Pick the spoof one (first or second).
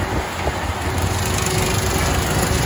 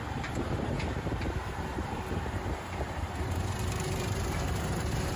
second